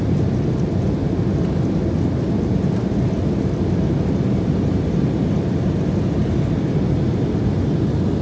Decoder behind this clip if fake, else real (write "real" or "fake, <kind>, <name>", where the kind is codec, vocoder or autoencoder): real